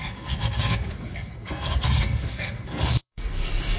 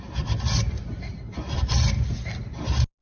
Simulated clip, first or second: first